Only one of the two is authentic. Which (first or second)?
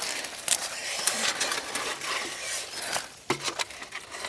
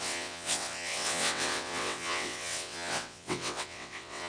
first